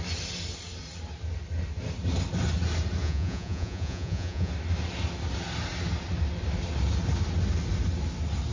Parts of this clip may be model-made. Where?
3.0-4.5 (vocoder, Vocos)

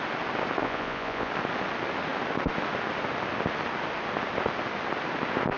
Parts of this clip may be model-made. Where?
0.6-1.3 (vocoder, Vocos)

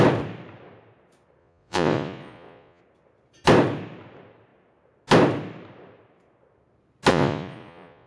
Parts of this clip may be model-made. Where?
1.4-2.8 (vocoder, Vocos); 7.1-8.1